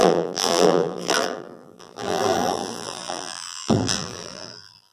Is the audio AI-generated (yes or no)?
yes